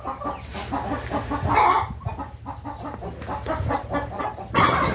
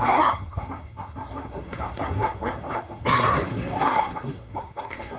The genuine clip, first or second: first